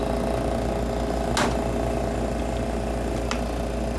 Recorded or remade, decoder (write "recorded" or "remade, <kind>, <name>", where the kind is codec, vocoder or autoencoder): recorded